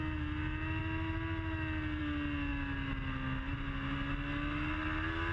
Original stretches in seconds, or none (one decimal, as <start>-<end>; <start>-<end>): 0.0-5.3